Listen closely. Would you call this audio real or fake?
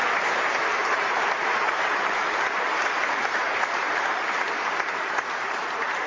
fake